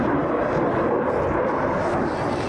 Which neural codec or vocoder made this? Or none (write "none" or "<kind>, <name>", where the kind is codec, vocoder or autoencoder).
none